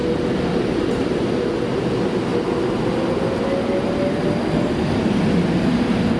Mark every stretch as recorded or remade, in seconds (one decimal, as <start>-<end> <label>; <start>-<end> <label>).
0.0-6.2 recorded